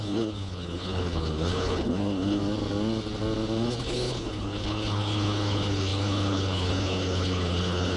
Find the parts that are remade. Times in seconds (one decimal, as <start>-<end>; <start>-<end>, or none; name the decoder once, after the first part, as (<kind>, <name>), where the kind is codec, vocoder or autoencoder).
0.0-2.4 (codec, HILCodec); 3.8-8.0